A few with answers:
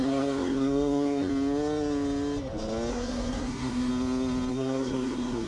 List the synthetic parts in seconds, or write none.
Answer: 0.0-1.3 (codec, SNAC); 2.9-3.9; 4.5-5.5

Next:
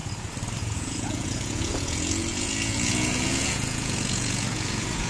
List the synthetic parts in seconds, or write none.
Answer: 0.6-5.1 (vocoder, Vocos)

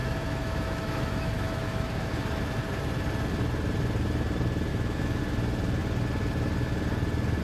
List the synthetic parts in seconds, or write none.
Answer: 0.0-2.6 (autoencoder, DAC-VAE); 4.7-5.2

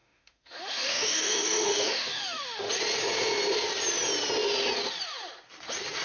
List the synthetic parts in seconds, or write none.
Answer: 0.0-2.7 (autoencoder, DAC-VAE)

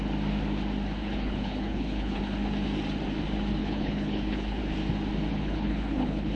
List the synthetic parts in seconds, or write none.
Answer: 1.0-2.2 (codec, HILCodec); 3.6-4.6; 5.3-6.4